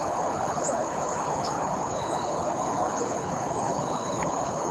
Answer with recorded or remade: remade